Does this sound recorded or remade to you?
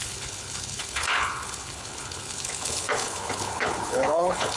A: remade